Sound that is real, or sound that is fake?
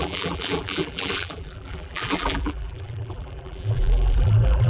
fake